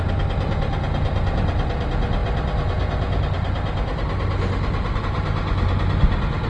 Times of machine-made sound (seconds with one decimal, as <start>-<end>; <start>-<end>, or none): none